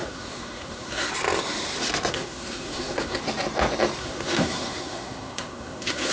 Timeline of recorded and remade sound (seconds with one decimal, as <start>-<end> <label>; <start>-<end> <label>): 0.0-1.1 remade; 1.1-2.1 recorded; 2.1-3.2 remade; 3.2-4.0 recorded; 4.0-6.1 remade